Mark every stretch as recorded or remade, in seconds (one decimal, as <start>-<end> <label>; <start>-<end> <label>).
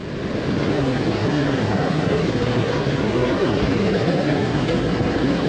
0.0-0.5 recorded; 0.5-5.5 remade